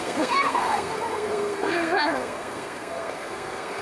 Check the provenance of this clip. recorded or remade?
remade